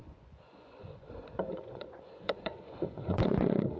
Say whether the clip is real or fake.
fake